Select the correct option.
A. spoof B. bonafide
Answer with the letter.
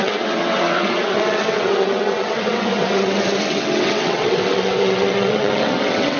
A